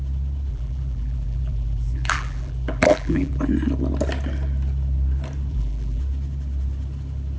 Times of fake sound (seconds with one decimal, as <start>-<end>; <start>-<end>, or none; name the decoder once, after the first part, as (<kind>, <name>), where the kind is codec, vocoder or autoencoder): 0.5-3.5 (vocoder, BigVGAN v2); 5.5-6.0